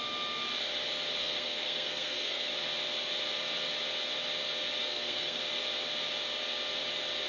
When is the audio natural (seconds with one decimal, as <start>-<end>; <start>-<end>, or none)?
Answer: 0.0-1.2; 2.5-4.8; 5.4-7.3